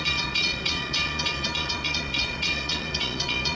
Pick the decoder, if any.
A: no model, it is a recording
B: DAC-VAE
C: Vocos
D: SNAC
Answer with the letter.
C